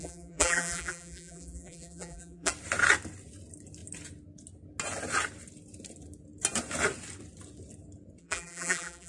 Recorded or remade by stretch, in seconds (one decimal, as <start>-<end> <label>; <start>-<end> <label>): 0.0-2.5 remade; 2.5-8.2 recorded; 8.2-9.1 remade